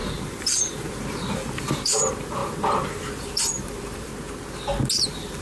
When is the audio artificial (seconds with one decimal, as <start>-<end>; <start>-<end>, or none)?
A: 0.0-4.1; 5.0-5.4